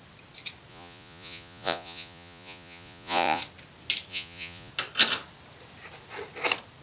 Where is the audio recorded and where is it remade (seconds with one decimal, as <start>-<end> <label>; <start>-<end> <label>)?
0.0-0.7 recorded; 0.7-3.4 remade; 3.4-4.1 recorded; 4.1-4.7 remade; 4.7-6.8 recorded